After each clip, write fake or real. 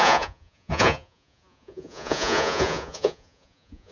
fake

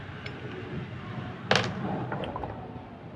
real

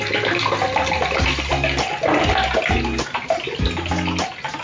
real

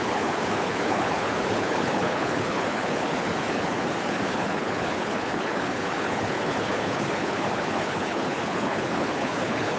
fake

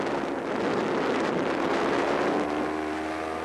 real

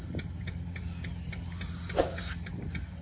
real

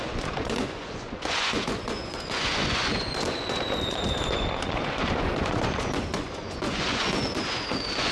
fake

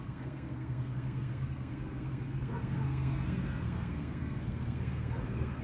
fake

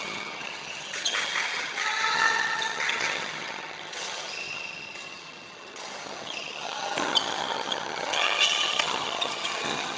fake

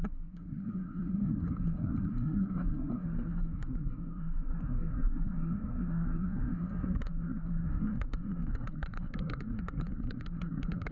fake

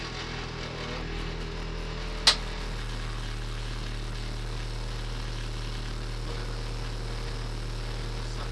real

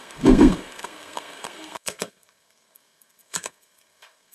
fake